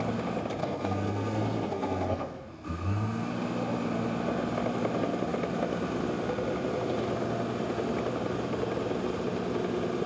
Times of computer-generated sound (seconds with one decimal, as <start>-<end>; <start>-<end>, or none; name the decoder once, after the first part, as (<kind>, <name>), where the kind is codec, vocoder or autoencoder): 0.6-3.3 (codec, SNAC)